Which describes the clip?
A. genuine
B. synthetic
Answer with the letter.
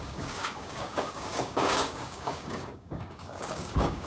B